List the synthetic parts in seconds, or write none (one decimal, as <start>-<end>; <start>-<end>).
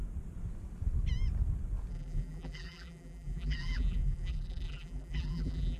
1.9-5.8